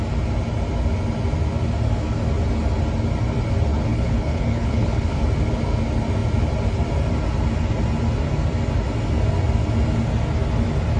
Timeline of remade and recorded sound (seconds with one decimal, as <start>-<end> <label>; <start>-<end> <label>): 0.0-3.7 recorded; 3.7-5.2 remade; 5.2-11.0 recorded